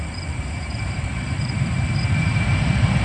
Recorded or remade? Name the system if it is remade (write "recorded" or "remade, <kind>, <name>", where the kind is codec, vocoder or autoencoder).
remade, vocoder, BigVGAN v2